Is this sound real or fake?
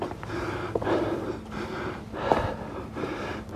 fake